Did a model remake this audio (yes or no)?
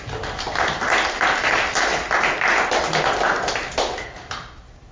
no